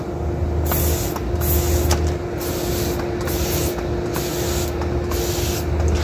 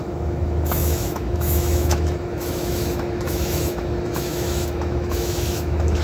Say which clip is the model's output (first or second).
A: second